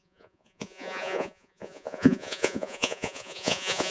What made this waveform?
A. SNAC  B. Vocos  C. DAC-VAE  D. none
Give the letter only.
B